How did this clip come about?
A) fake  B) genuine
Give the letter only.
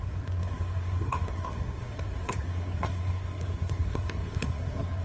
A